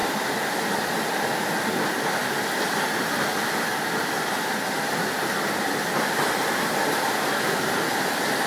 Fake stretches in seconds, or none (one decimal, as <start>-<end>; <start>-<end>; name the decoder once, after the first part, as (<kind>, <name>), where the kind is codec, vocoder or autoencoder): none